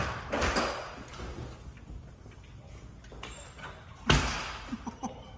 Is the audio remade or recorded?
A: recorded